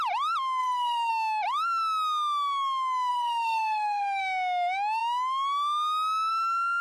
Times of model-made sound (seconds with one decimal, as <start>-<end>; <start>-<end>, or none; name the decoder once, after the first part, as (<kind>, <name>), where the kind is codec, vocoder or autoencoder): 0.6-1.1 (codec, SNAC); 3.1-4.2